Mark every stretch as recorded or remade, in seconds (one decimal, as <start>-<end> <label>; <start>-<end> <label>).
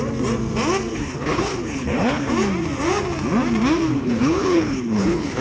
0.0-0.9 recorded; 0.9-2.3 remade; 2.3-3.9 recorded; 3.9-5.4 remade